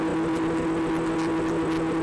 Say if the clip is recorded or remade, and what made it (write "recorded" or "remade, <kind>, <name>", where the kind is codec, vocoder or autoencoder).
recorded